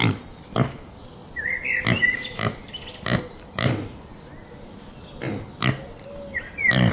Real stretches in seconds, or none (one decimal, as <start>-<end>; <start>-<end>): 0.0-1.2; 1.7-6.9